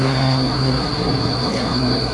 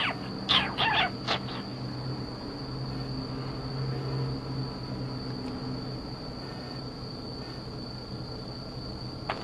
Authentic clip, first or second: second